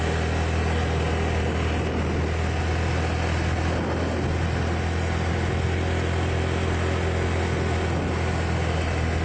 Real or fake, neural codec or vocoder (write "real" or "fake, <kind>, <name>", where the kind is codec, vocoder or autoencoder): real